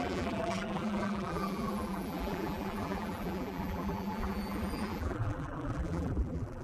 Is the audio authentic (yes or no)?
no